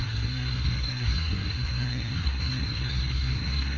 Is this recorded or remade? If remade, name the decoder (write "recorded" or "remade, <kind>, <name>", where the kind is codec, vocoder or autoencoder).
remade, codec, SNAC